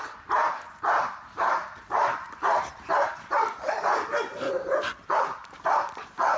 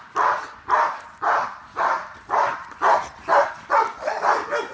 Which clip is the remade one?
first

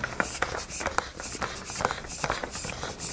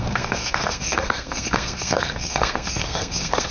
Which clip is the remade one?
second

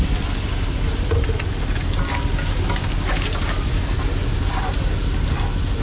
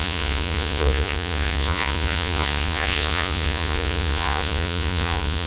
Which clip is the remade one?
second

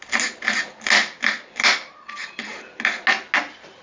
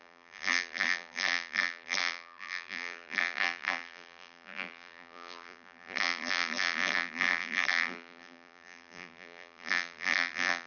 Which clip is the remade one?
second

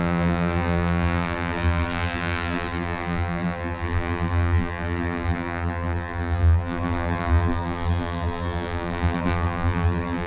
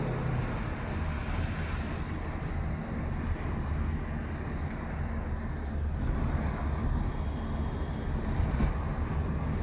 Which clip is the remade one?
first